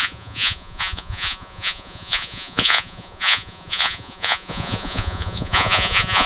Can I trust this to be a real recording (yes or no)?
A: no